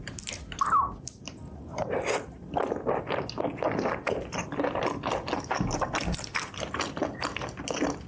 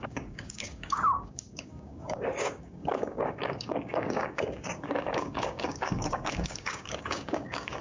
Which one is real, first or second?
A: first